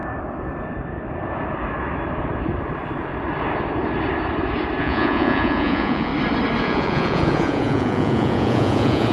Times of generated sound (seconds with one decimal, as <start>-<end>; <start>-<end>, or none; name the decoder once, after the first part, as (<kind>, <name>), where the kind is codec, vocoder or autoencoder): 4.8-6.1 (vocoder, Vocos); 6.6-9.1